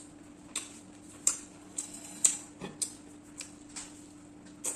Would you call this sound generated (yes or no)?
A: no